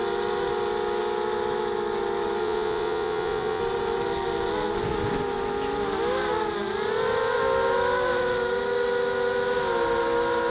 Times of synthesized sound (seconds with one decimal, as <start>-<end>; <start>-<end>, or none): 2.4-3.6